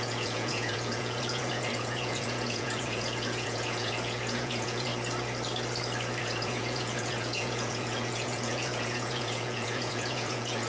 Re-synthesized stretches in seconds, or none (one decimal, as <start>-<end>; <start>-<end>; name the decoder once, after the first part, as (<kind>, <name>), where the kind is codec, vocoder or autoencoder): 0.0-4.9 (vocoder, Vocos); 6.2-10.7